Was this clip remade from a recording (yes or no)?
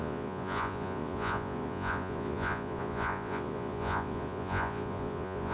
yes